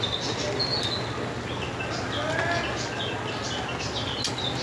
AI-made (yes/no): no